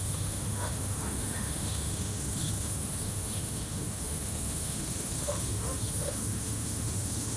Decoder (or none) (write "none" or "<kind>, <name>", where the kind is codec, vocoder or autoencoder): autoencoder, DAC-VAE